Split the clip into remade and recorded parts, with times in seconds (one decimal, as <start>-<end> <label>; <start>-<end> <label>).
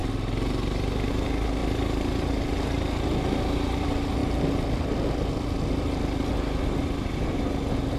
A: 0.0-8.0 recorded